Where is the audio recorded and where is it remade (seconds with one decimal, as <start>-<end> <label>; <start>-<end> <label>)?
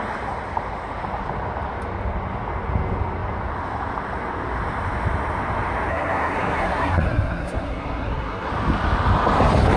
0.0-5.9 recorded; 5.9-8.5 remade; 8.5-9.8 recorded